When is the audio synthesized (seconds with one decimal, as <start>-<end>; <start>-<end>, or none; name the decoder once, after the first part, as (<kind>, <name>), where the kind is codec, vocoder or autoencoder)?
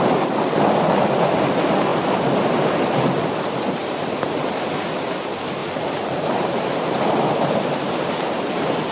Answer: 1.9-4.3 (vocoder, BigVGAN v2); 5.6-8.5